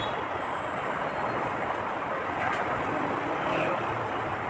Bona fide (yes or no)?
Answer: yes